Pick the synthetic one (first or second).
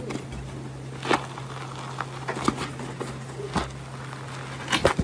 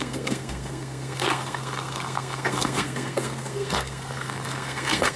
second